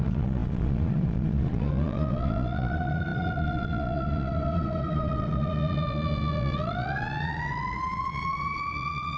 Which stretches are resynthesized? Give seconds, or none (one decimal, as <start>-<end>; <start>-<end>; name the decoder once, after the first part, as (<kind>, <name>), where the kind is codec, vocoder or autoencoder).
0.0-9.2 (vocoder, Vocos)